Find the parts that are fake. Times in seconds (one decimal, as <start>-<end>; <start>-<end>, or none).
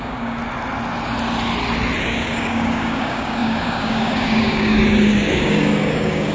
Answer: 0.0-0.4; 2.0-6.3